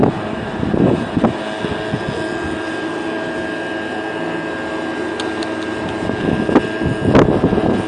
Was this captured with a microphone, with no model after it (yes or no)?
yes